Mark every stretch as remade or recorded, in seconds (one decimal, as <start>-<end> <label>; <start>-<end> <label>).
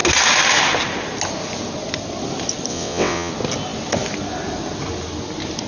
0.0-2.7 recorded; 2.7-3.3 remade; 3.3-5.7 recorded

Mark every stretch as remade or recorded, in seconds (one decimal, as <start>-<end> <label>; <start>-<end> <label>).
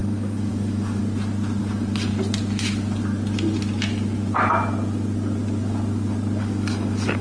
0.0-1.0 remade; 1.0-1.6 recorded; 1.6-2.1 remade; 2.1-6.4 recorded; 6.4-7.2 remade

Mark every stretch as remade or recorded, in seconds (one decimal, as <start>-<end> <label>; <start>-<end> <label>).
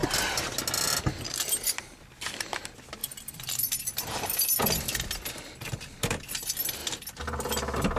0.0-3.0 recorded; 3.0-3.5 remade; 3.5-8.0 recorded